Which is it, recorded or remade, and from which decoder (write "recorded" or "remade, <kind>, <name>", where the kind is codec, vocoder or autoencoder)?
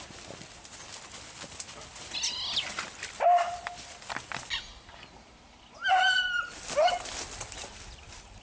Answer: recorded